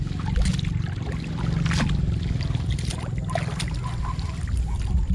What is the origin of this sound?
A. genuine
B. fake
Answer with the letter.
A